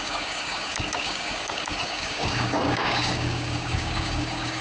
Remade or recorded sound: remade